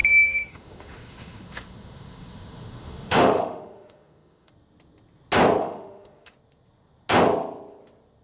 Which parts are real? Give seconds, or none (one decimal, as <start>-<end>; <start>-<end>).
4.5-5.6; 6.3-8.2